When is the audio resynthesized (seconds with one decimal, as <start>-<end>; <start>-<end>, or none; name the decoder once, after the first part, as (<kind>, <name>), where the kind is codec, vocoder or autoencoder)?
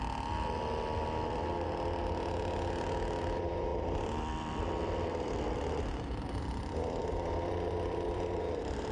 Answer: 3.7-8.9 (vocoder, BigVGAN v2)